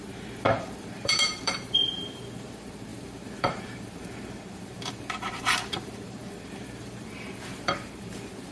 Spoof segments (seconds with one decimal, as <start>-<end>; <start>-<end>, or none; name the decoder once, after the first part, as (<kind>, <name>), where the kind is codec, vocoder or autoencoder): 0.0-8.5 (vocoder, BigVGAN v2)